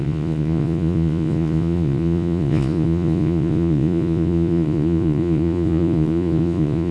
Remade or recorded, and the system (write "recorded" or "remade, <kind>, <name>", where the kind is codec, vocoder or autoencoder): remade, vocoder, Vocos